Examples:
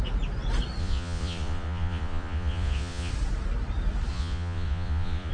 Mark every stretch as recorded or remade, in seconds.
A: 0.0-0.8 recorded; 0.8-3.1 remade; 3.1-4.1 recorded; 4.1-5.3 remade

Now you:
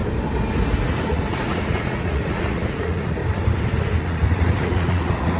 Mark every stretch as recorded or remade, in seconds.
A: 0.0-0.8 recorded; 0.8-3.2 remade; 3.2-4.0 recorded; 4.0-5.4 remade